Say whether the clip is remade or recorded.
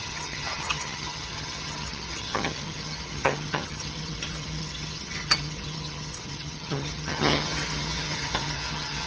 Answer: remade